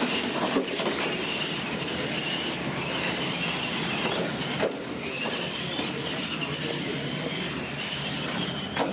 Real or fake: real